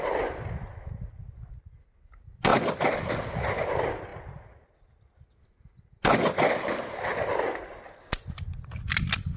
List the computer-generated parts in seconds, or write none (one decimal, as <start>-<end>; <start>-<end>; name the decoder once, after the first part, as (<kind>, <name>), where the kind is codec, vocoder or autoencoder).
none